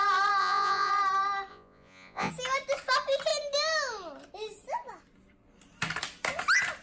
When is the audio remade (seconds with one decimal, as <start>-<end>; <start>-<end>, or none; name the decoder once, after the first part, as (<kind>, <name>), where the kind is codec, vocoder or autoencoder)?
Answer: 0.4-0.9 (vocoder, Vocos); 1.5-2.3

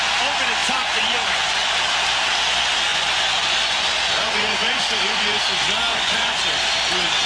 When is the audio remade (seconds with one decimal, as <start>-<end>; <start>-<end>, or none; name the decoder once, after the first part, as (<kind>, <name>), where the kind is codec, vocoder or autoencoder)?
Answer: 0.6-1.7 (vocoder, Vocos); 2.9-5.4; 5.9-6.4